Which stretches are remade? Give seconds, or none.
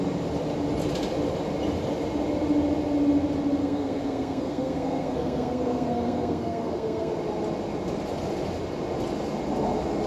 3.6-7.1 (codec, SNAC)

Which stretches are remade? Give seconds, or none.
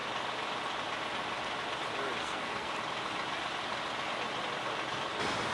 2.2-2.7 (codec, SNAC)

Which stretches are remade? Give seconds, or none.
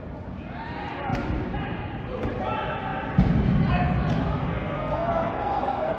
4.4-6.0 (codec, SNAC)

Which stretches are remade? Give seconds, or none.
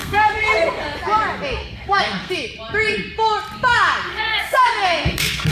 0.0-0.8 (codec, SNAC); 1.6-2.3; 4.1-5.5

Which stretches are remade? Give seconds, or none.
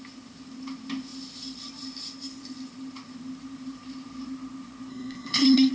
4.9-5.7 (codec, SNAC)